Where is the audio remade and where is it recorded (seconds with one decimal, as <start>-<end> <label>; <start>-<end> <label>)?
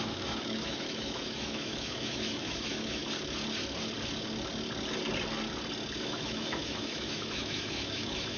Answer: 0.0-3.0 remade; 3.0-6.0 recorded; 6.0-8.4 remade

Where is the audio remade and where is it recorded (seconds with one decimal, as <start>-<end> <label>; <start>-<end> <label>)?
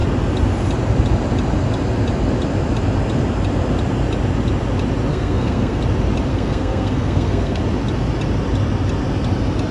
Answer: 0.0-5.1 recorded; 5.1-5.8 remade; 5.8-6.3 recorded; 6.3-7.6 remade; 7.6-9.7 recorded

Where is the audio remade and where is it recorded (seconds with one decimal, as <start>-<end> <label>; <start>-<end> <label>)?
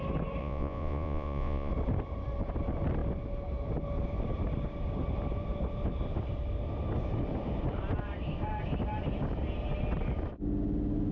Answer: 0.0-0.4 recorded; 0.4-1.7 remade; 1.7-11.1 recorded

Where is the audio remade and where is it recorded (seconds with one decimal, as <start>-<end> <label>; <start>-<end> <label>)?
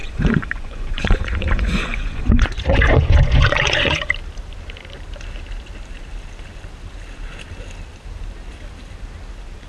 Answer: 0.0-4.1 remade; 4.1-9.7 recorded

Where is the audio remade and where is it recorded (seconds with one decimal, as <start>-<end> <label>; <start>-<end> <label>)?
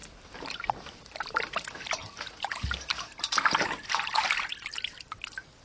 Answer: 0.0-5.6 recorded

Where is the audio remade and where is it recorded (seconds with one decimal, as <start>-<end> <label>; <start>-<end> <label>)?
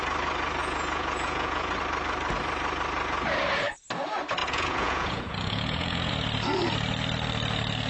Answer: 0.0-0.6 recorded; 0.6-1.7 remade; 1.7-4.4 recorded; 4.4-6.1 remade; 6.1-7.9 recorded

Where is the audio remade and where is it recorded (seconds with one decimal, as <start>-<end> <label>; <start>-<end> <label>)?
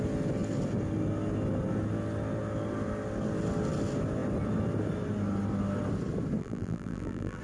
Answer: 0.0-6.4 recorded; 6.4-7.4 remade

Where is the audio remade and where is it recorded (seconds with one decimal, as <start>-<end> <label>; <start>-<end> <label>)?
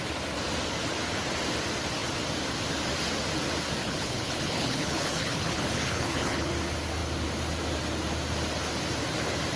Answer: 0.0-3.8 recorded; 3.8-6.5 remade; 6.5-9.6 recorded